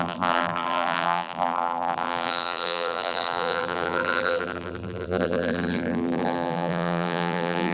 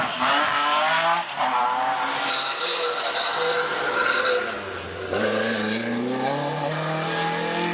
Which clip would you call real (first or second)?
second